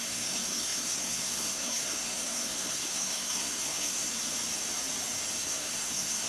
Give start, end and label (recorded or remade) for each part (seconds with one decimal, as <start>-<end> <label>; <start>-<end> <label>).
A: 0.0-4.1 remade; 4.1-5.4 recorded; 5.4-6.3 remade